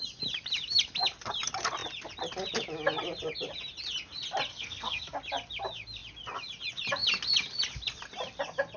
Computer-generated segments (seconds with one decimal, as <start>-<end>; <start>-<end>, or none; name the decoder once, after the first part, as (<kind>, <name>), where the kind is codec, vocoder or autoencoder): 4.5-5.2 (codec, SNAC)